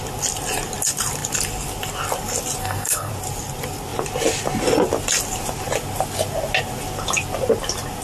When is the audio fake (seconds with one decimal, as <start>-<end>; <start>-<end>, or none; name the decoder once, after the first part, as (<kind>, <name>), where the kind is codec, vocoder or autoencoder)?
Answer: 2.6-3.1 (codec, SNAC)